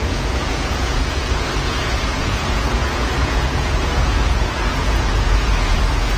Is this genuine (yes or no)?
no